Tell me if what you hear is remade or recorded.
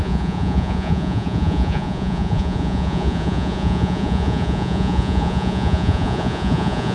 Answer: remade